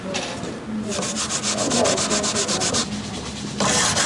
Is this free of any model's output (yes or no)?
yes